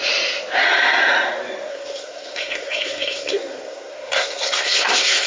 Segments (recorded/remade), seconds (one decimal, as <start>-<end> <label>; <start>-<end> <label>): 0.0-1.7 recorded; 1.7-5.3 remade